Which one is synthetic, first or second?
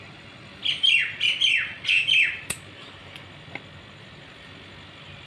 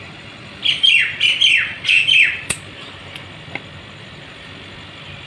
second